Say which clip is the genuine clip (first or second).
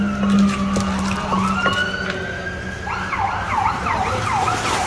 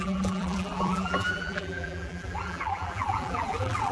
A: first